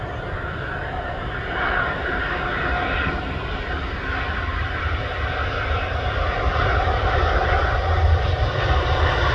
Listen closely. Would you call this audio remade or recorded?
recorded